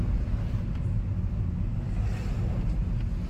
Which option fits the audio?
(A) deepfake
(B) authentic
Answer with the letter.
B